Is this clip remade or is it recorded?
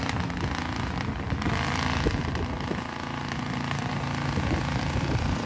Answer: recorded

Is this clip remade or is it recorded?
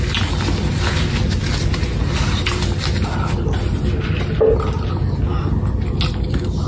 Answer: recorded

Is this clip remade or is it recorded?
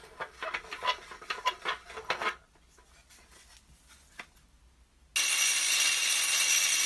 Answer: recorded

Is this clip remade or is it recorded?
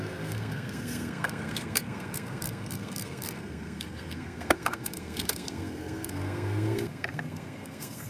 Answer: remade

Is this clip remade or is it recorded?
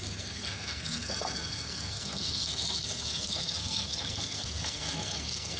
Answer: remade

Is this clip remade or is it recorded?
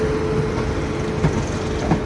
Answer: recorded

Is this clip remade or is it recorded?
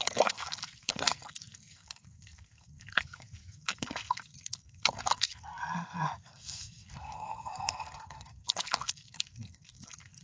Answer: remade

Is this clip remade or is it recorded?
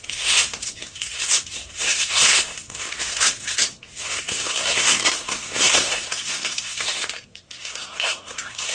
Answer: remade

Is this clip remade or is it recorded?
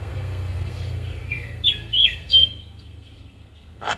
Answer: remade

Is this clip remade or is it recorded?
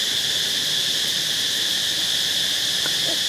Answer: recorded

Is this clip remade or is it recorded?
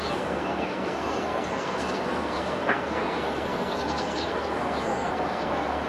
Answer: remade